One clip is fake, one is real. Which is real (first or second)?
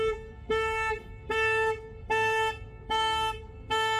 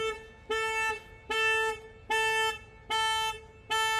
second